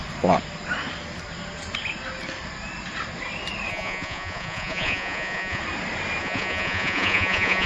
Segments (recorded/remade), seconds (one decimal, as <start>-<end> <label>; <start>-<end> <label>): 0.0-3.7 recorded; 3.7-5.6 remade; 5.6-6.2 recorded; 6.2-7.7 remade